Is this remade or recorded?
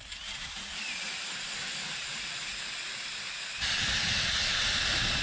recorded